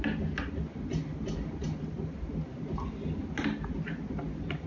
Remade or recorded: recorded